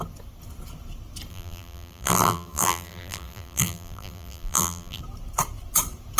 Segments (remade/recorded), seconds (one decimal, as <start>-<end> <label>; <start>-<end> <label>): 0.0-1.3 recorded; 1.3-5.0 remade; 5.0-6.2 recorded